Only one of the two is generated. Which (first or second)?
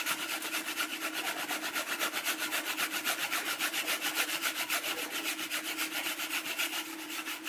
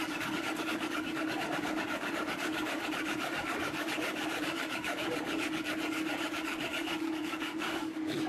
second